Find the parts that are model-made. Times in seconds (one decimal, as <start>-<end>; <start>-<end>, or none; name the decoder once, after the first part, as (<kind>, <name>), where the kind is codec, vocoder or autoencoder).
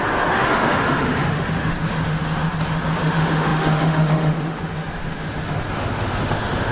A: 0.0-6.7 (autoencoder, DAC-VAE)